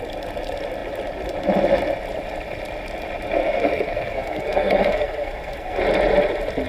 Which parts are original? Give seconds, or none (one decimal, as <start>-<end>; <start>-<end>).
0.0-3.4; 5.8-6.7